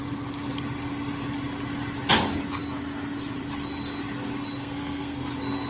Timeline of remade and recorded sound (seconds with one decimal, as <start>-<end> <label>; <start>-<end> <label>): 0.0-4.6 recorded; 4.6-5.3 remade; 5.3-5.7 recorded